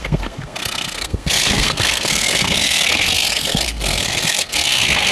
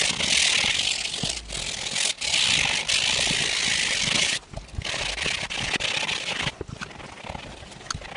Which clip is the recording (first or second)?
second